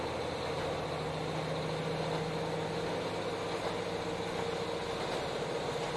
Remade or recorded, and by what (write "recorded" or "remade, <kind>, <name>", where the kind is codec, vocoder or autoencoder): recorded